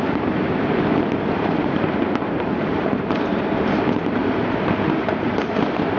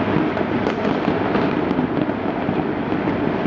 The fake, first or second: first